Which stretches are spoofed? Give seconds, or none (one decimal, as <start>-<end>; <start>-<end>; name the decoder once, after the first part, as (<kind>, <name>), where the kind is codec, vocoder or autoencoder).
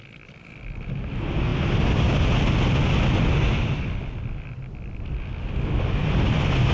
none